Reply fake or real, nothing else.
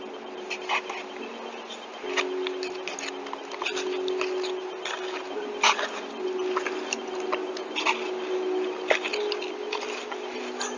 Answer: real